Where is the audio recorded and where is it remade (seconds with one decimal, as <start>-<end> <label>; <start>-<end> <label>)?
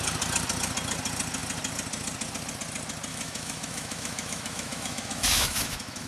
0.0-3.1 recorded; 3.1-6.1 remade